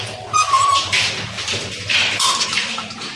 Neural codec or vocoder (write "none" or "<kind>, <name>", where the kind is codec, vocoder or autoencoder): vocoder, BigVGAN v2